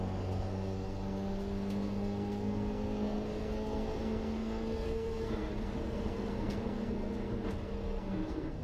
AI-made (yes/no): yes